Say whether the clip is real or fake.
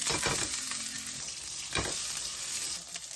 real